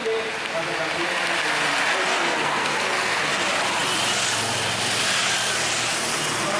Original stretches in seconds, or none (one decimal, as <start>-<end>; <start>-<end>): 0.0-2.1; 3.2-6.6